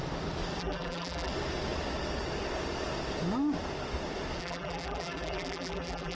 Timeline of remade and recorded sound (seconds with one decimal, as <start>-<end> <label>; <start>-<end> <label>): 0.0-0.6 recorded; 0.6-1.3 remade; 1.3-4.4 recorded; 4.4-6.1 remade